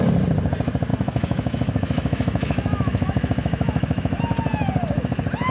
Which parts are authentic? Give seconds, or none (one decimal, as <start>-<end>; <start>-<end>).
0.0-0.9; 4.2-5.5